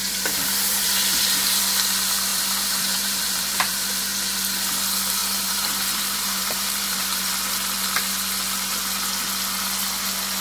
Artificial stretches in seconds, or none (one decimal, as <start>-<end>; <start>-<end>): 0.0-1.6; 2.3-4.1; 5.2-7.3